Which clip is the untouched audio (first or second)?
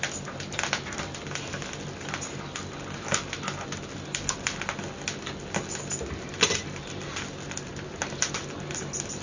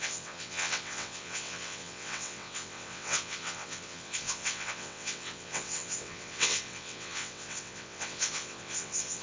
first